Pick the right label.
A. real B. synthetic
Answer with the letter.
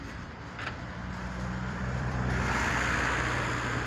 B